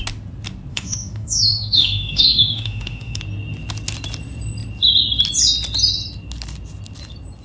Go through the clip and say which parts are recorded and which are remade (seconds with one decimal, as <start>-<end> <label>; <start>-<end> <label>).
0.0-0.7 recorded; 0.7-3.2 remade; 3.2-7.4 recorded